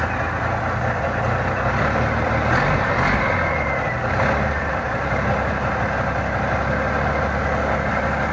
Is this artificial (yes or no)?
no